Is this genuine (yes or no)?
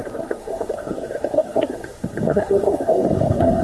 no